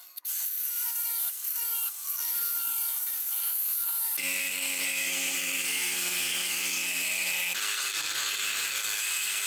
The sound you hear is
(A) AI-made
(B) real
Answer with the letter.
A